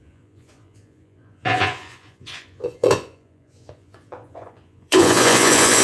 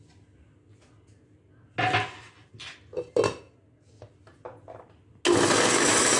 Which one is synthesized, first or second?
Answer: first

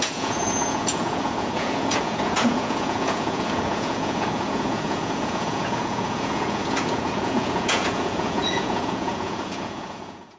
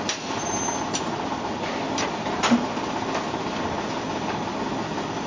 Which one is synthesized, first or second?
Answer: first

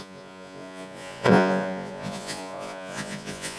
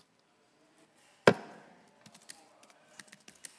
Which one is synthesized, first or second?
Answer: first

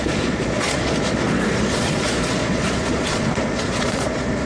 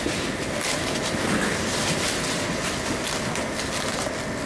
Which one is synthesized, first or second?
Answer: first